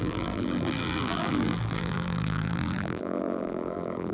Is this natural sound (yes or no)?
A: no